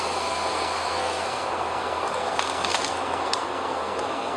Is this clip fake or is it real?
fake